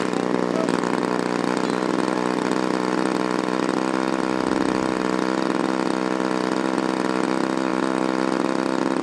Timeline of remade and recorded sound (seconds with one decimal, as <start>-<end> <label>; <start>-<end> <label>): 0.0-9.0 recorded